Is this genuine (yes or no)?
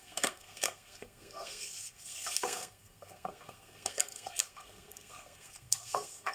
no